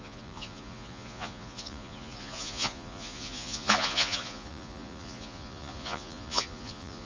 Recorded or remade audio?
remade